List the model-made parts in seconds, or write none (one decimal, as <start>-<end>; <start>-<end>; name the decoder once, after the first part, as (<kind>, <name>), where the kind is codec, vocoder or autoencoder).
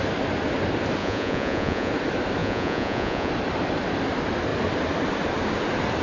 1.0-1.9 (vocoder, Vocos); 2.4-3.3